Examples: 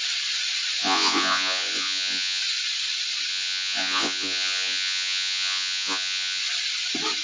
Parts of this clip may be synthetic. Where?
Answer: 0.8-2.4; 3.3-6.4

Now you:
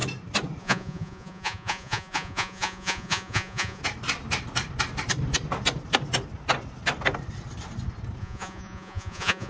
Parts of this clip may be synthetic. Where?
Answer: 0.6-3.8; 8.2-9.5

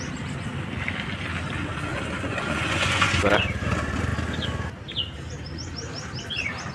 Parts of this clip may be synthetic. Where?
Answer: 1.7-3.2

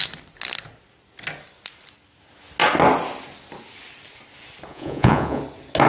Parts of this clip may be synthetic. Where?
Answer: 4.7-5.4

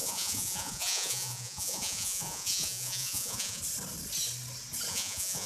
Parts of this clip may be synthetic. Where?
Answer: 0.0-3.6; 4.9-5.5

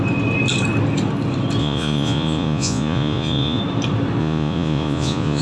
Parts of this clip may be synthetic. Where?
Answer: 1.6-3.6; 4.2-5.4

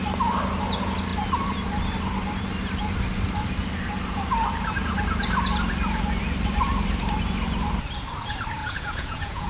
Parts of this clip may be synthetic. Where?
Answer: 8.6-9.5

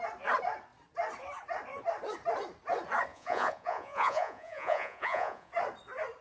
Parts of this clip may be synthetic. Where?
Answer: 3.1-5.5